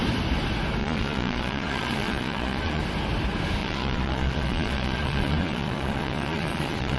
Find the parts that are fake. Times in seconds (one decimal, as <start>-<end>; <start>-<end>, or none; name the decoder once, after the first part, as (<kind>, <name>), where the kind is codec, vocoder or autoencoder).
0.8-2.8 (vocoder, Vocos); 3.6-7.0